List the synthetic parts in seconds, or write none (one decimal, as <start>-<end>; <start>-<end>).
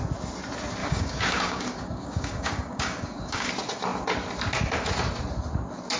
0.8-3.5